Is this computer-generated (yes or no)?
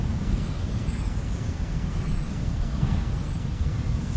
yes